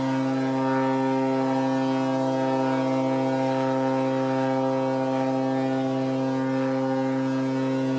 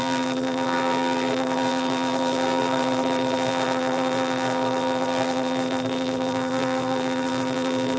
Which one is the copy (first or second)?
second